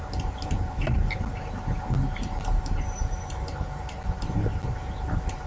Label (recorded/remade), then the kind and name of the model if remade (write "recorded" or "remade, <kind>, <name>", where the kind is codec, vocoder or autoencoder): recorded